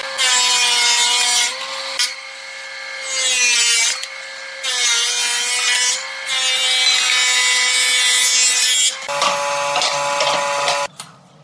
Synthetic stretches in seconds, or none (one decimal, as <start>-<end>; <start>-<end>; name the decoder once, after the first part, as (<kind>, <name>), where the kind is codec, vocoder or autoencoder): none